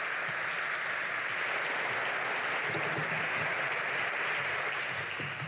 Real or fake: real